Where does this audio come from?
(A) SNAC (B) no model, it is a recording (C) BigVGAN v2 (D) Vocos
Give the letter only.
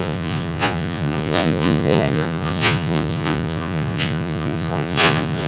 D